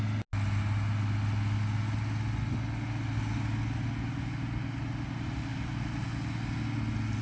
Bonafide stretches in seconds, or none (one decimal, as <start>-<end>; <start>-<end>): 0.0-7.2